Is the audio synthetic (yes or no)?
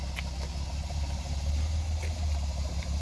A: no